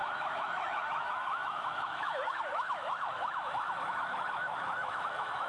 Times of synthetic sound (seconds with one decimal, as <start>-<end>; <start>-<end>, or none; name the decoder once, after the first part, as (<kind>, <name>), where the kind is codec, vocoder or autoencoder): 0.0-5.5 (autoencoder, DAC-VAE)